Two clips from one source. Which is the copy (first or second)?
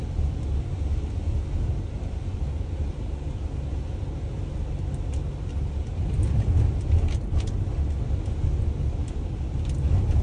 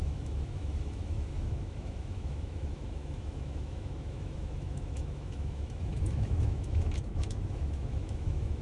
second